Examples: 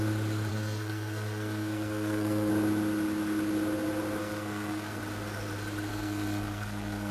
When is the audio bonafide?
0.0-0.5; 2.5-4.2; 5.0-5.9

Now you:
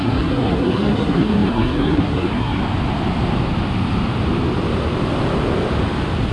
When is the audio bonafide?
2.6-6.3

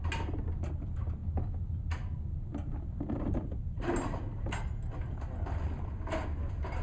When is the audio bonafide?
0.0-6.8

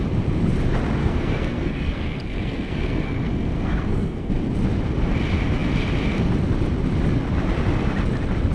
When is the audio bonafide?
0.0-1.0; 4.3-8.5

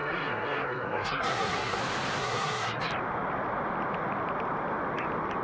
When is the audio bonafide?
1.8-2.2; 2.9-5.4

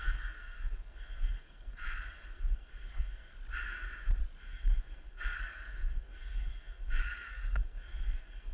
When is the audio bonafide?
3.3-4.5